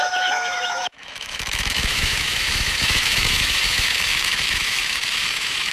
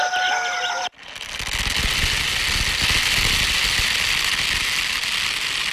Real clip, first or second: second